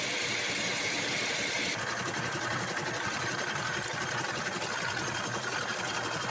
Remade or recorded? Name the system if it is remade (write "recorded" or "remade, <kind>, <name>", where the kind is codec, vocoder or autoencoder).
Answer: remade, vocoder, BigVGAN v2